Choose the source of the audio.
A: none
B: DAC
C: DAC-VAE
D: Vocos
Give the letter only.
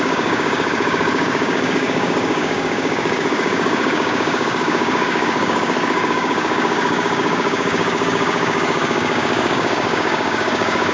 B